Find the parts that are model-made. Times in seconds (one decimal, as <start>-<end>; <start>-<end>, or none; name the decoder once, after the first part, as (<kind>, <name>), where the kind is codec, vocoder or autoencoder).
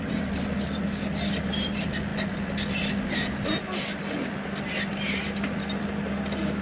none